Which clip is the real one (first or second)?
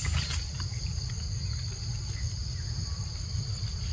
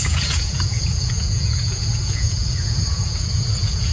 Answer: first